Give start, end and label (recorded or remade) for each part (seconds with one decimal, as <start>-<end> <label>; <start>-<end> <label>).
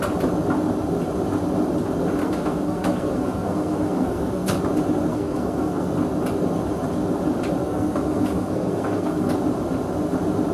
0.0-2.2 recorded; 2.2-4.6 remade; 4.6-5.1 recorded; 5.1-5.9 remade; 5.9-7.6 recorded; 7.6-9.3 remade; 9.3-10.5 recorded